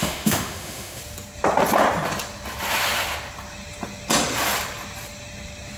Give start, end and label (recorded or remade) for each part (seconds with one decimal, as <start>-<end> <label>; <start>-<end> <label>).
0.0-1.0 remade; 1.0-5.8 recorded